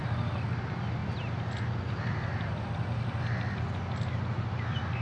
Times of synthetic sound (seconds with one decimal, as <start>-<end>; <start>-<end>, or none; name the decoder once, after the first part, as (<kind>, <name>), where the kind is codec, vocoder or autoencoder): none